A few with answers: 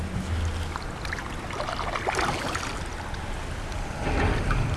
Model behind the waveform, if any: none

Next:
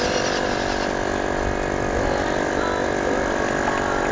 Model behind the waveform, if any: none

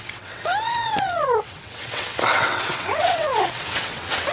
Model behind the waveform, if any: vocoder, WaveNeXt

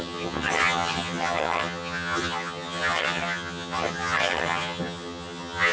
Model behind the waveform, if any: vocoder, HiFi-GAN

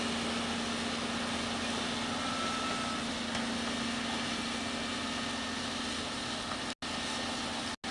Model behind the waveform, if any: none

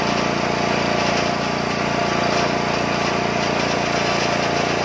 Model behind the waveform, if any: none